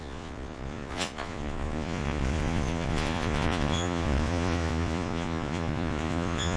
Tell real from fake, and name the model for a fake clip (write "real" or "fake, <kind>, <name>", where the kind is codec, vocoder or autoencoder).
fake, vocoder, Vocos